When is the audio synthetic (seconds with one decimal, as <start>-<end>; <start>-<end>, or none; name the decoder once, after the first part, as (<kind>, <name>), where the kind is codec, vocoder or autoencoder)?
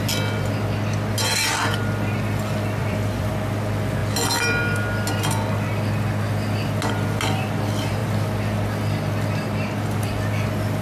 2.8-3.3 (vocoder, BigVGAN v2)